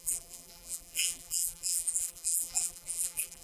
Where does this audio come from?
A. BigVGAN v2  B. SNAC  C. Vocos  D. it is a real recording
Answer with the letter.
A